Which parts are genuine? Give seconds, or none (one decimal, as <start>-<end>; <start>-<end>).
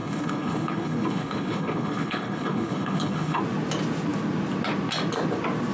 3.4-5.7